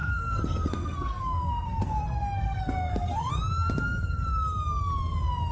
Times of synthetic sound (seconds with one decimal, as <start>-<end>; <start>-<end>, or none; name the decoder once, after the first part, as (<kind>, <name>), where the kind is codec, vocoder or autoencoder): 0.0-3.3 (codec, SNAC)